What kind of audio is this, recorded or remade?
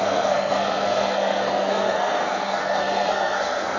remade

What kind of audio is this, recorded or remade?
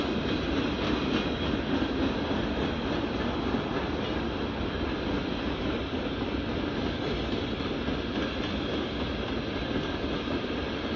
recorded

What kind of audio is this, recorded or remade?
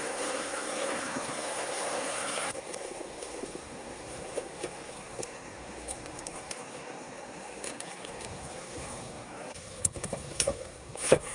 remade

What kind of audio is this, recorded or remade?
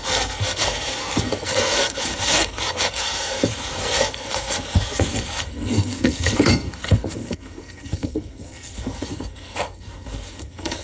remade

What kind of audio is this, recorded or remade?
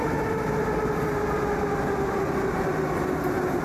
recorded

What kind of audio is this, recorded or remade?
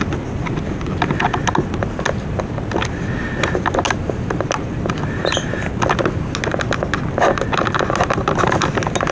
recorded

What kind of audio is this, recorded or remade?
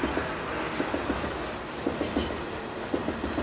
recorded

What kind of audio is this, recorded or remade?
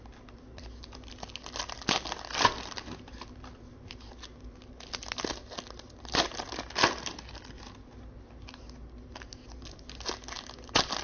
recorded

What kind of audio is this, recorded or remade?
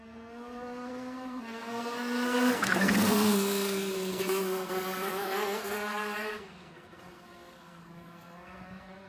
remade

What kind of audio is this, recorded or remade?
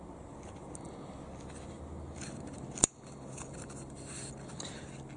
recorded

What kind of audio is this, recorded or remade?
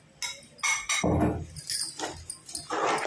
recorded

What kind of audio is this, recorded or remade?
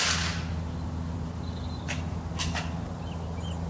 recorded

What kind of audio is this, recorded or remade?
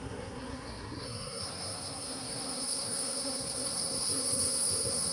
remade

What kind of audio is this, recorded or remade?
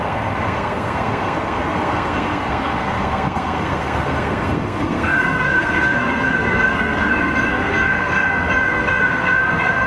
remade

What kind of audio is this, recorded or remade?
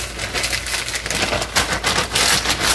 recorded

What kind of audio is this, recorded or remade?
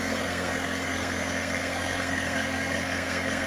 remade